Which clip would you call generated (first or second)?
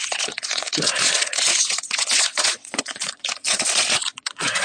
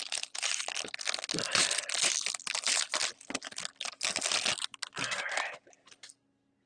first